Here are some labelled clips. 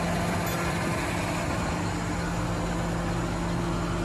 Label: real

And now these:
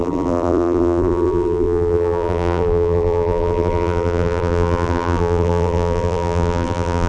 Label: fake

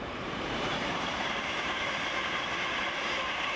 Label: fake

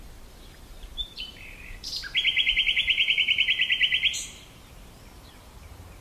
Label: fake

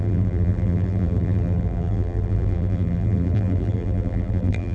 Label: fake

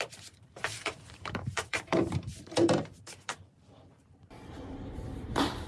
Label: fake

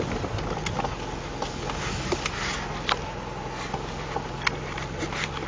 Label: real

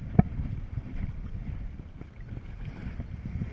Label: fake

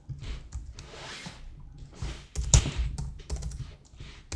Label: real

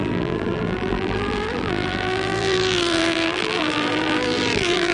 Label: fake